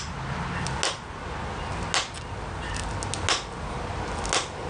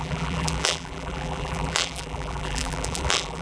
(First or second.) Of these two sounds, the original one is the first